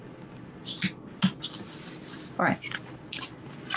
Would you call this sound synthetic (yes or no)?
no